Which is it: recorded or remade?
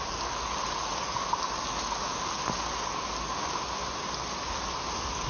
recorded